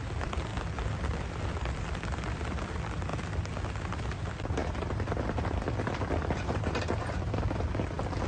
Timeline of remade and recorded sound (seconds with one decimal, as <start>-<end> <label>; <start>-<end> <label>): 0.0-0.5 remade; 0.5-1.5 recorded; 1.5-3.1 remade; 3.1-3.9 recorded; 3.9-8.3 remade